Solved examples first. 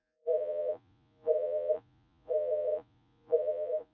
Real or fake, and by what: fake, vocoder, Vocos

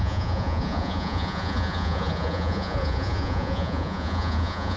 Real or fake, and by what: fake, vocoder, Vocos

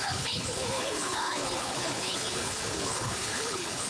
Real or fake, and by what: fake, codec, HILCodec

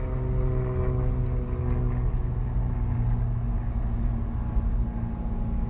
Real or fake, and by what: real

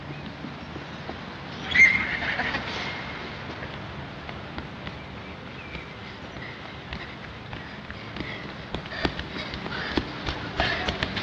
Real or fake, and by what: real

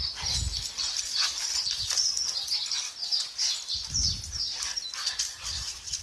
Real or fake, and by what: real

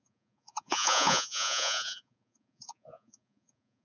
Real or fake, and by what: fake, vocoder, Vocos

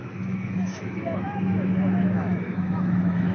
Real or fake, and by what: fake, autoencoder, DAC-VAE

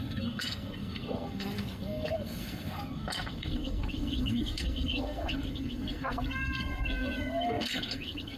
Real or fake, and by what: fake, codec, SNAC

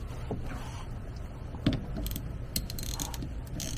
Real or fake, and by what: real